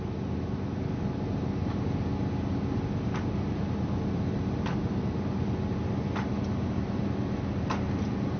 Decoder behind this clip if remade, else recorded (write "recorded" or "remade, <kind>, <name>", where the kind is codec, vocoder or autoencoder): recorded